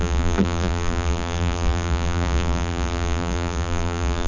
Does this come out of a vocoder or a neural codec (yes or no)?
yes